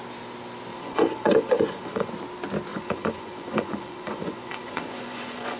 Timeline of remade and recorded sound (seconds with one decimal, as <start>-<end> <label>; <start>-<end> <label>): 0.0-0.7 recorded; 0.7-2.1 remade; 2.1-2.7 recorded; 2.7-5.6 remade